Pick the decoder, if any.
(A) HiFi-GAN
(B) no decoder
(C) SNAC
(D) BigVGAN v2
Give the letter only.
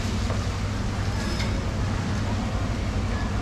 B